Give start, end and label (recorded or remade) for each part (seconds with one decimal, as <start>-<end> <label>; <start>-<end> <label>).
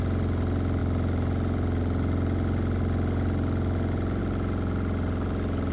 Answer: 0.0-5.7 recorded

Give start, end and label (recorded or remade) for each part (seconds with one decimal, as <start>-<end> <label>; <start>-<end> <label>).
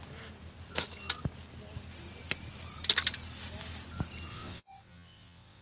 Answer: 0.0-4.3 recorded; 4.3-5.6 remade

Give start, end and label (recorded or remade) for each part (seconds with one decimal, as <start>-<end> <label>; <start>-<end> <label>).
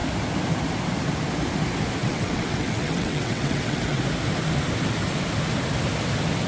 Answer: 0.0-2.0 recorded; 2.0-4.0 remade; 4.0-6.5 recorded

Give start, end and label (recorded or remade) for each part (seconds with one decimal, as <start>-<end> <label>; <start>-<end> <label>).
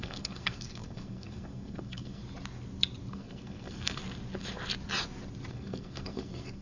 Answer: 0.0-2.2 remade; 2.2-3.1 recorded; 3.1-4.0 remade; 4.0-5.5 recorded; 5.5-6.6 remade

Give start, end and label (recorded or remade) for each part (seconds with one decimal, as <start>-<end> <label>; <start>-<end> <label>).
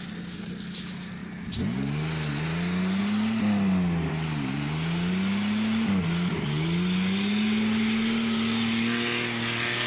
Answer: 0.0-9.9 recorded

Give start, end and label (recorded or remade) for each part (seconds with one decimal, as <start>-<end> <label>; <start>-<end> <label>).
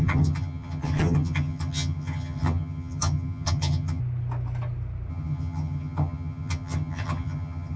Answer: 0.0-4.0 remade; 4.0-5.1 recorded; 5.1-7.8 remade